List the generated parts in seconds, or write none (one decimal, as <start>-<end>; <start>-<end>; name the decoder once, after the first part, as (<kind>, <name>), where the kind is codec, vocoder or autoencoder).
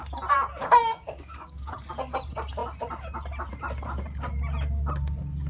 0.6-1.7 (codec, DAC)